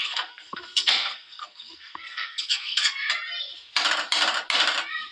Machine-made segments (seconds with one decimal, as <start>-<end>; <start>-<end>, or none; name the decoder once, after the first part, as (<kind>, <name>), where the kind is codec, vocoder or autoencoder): 0.0-3.1 (codec, SNAC)